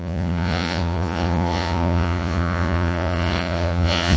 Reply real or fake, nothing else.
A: fake